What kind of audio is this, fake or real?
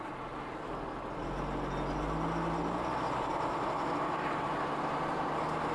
real